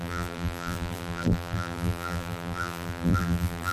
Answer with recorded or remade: remade